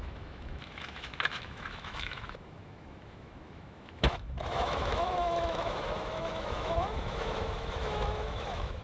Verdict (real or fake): fake